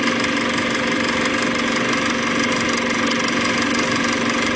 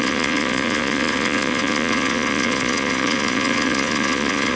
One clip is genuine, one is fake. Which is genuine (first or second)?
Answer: first